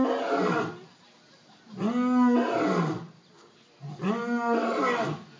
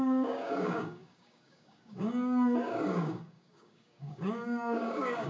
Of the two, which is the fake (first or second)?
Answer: second